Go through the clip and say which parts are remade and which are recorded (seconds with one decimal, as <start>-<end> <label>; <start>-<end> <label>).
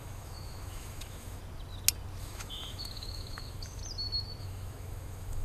0.0-1.4 remade; 1.4-2.2 recorded; 2.2-3.8 remade; 3.8-4.4 recorded; 4.4-5.4 remade